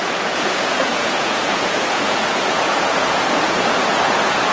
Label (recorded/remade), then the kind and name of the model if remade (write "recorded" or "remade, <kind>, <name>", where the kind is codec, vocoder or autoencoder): remade, vocoder, Vocos